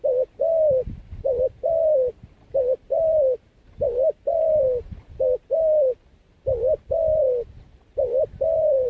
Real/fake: fake